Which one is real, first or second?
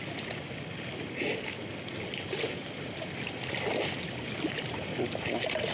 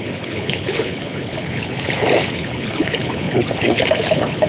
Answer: first